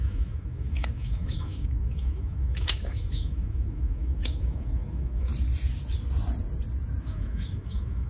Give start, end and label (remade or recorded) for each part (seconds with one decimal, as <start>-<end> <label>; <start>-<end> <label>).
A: 0.0-5.3 remade; 5.3-7.0 recorded; 7.0-8.1 remade